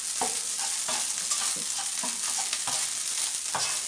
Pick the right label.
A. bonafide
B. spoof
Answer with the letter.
A